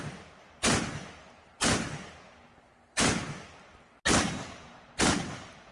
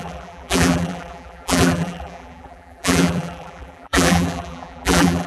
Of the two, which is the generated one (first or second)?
second